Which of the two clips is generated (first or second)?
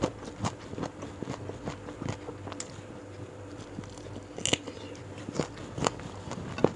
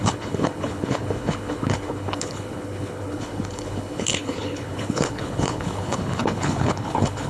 second